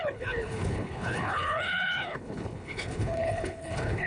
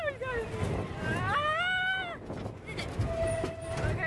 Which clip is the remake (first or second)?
first